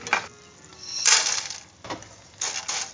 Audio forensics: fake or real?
real